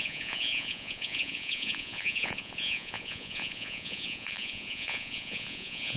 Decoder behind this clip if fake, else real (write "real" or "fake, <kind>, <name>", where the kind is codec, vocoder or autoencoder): fake, vocoder, Vocos